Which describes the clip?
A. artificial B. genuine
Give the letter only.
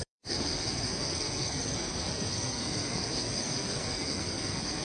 A